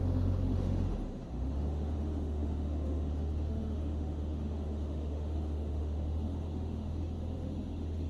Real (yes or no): no